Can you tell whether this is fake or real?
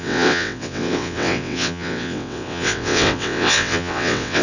fake